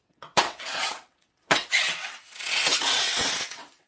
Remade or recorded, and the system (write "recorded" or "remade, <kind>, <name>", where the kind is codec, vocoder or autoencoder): remade, vocoder, WaveNeXt